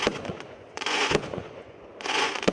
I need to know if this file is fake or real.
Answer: fake